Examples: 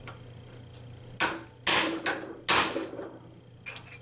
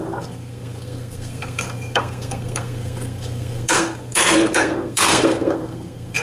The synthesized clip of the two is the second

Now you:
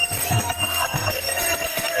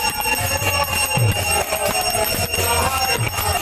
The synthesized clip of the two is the first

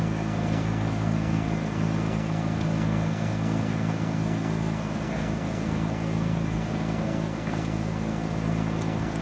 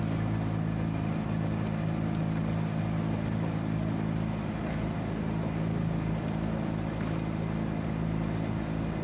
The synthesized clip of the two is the first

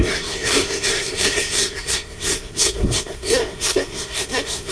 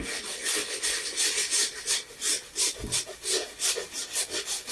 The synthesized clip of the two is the first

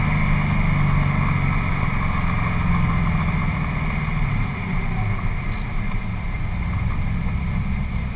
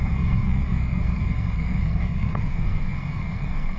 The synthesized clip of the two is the second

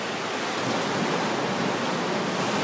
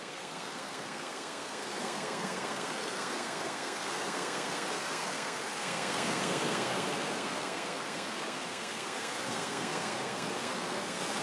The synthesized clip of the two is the second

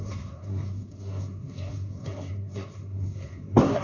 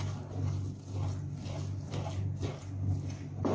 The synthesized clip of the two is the first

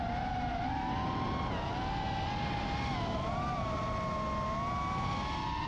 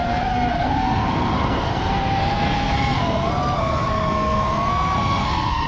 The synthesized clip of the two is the second